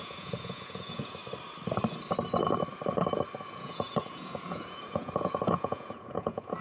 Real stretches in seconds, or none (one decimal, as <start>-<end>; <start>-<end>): 1.2-3.4